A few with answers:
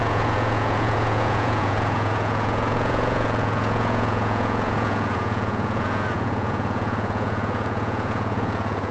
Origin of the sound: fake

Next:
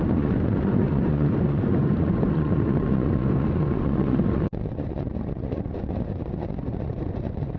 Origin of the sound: fake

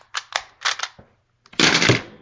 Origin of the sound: real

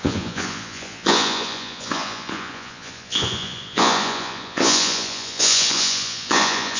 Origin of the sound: fake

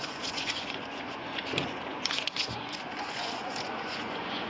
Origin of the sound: fake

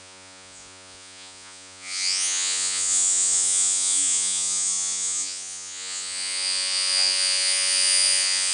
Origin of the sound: fake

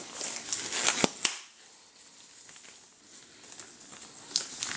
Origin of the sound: real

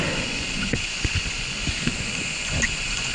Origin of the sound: fake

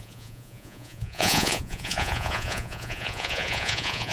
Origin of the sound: fake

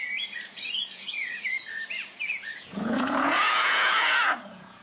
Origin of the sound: fake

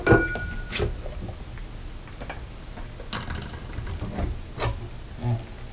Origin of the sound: real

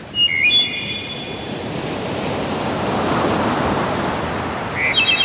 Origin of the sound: real